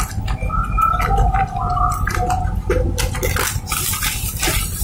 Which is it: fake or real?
real